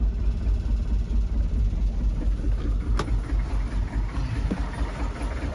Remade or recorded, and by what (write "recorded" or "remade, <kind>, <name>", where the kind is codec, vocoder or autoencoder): recorded